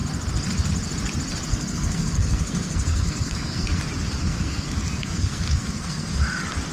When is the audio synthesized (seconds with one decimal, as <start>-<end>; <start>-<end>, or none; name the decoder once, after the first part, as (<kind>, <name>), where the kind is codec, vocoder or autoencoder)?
1.5-3.8 (codec, SNAC); 4.2-6.1